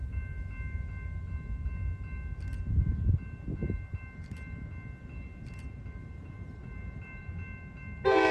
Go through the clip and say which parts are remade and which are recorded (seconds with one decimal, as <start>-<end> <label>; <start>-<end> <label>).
0.0-6.0 recorded; 6.0-7.2 remade; 7.2-8.3 recorded